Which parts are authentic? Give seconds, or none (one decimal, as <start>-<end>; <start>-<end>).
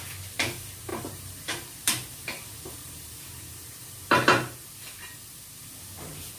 0.0-0.9; 4.7-6.4